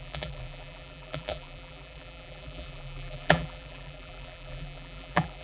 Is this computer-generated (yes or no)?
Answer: yes